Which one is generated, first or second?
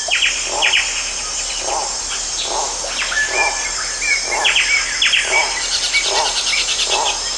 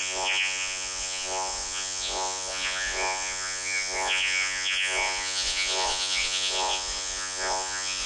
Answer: second